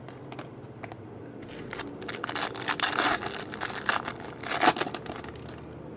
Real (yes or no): yes